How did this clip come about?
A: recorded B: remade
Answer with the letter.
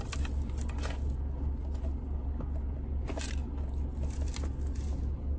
A